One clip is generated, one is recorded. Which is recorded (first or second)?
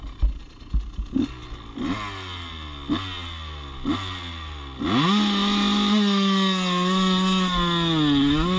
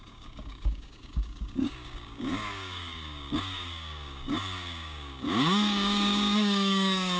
first